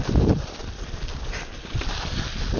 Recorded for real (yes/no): yes